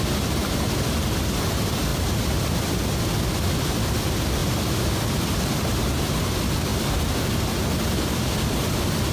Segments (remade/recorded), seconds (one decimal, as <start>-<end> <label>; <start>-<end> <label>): 0.0-9.1 recorded